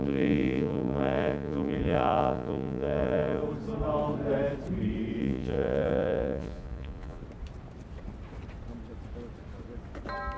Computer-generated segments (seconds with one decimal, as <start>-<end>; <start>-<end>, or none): 0.0-3.4; 5.2-7.2